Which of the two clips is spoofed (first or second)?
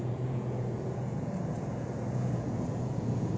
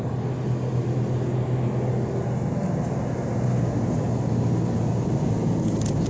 first